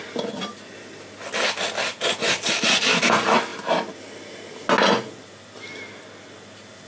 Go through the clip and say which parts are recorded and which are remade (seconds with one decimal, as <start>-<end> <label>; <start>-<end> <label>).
0.0-6.9 recorded